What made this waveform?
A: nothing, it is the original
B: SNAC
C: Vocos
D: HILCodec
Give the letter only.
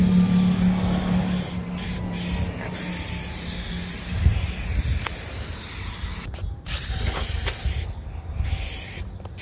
A